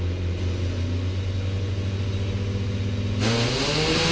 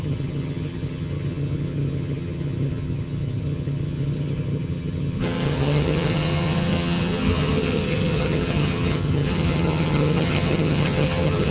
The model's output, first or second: second